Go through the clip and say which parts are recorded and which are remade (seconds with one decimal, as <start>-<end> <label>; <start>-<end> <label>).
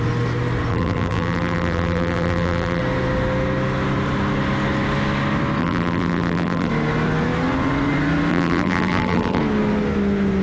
0.0-0.7 recorded; 0.7-2.8 remade; 2.8-5.6 recorded; 5.6-6.7 remade; 6.7-8.3 recorded; 8.3-9.4 remade; 9.4-10.4 recorded